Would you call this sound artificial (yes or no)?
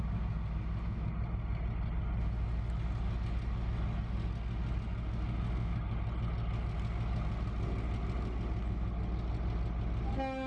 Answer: no